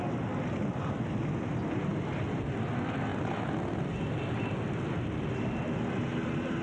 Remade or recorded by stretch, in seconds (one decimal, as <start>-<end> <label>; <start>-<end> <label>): 0.0-6.6 recorded